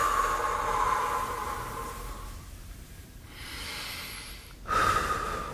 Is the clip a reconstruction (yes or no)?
no